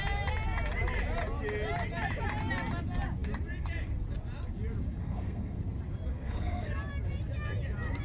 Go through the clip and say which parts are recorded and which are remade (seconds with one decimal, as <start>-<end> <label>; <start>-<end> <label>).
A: 0.0-5.0 recorded; 5.0-5.6 remade; 5.6-6.1 recorded; 6.1-6.7 remade; 6.7-8.0 recorded